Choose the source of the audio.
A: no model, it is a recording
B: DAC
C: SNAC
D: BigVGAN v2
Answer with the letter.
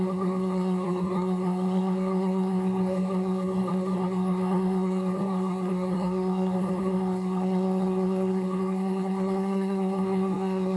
C